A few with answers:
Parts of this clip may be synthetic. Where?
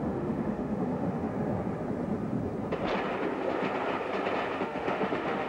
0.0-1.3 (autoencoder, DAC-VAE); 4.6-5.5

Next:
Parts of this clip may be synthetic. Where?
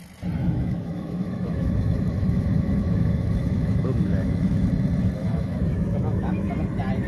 0.4-4.7 (autoencoder, DAC-VAE); 5.2-6.5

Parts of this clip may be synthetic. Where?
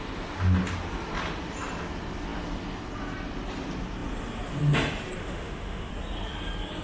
5.2-5.9 (autoencoder, DAC-VAE)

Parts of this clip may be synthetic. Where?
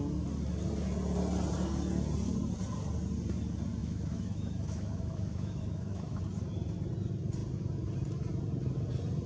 3.8-6.2 (autoencoder, DAC-VAE)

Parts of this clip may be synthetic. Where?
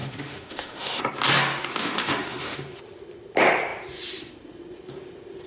0.0-1.0 (autoencoder, DAC-VAE); 1.7-2.8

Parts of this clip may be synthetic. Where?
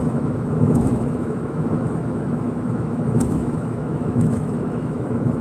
0.0-5.4 (autoencoder, DAC-VAE)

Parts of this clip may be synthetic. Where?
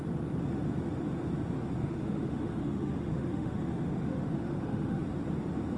1.8-5.0 (autoencoder, DAC-VAE)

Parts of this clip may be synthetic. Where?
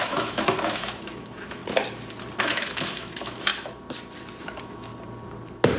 0.0-1.6 (autoencoder, DAC-VAE); 2.4-3.5; 4.4-4.9